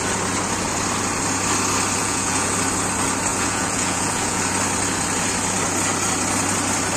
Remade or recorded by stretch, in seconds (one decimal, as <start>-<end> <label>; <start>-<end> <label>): 0.0-2.0 recorded; 2.0-2.5 remade; 2.5-3.3 recorded; 3.3-4.4 remade; 4.4-7.0 recorded